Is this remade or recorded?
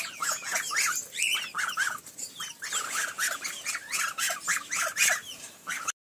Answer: recorded